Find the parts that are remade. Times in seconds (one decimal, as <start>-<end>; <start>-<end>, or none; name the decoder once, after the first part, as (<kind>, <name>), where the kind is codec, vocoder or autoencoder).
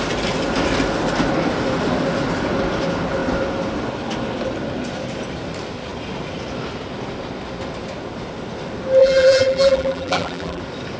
9.0-10.6 (vocoder, BigVGAN v2)